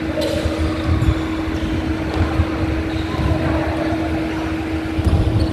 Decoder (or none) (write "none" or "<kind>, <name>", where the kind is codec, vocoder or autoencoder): none